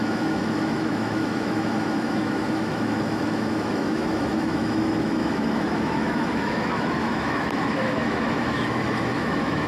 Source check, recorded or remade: remade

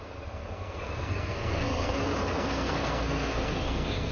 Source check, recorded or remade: remade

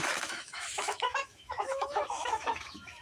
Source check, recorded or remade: remade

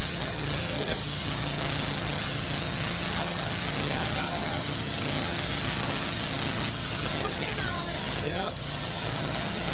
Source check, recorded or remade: remade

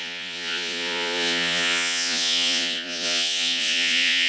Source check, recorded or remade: remade